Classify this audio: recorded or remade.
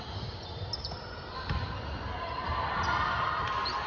recorded